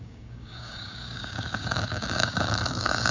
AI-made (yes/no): yes